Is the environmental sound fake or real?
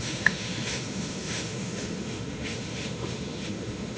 fake